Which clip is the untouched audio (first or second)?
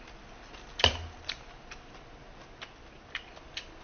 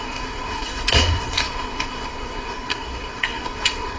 first